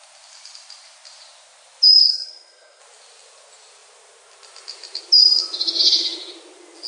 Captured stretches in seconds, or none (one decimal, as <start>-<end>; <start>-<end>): 0.0-2.0; 2.8-6.9